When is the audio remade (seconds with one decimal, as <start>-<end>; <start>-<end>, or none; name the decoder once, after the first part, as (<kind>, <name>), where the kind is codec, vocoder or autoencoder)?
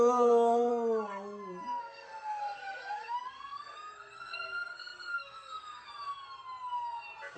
0.0-0.7 (codec, SNAC); 1.8-5.9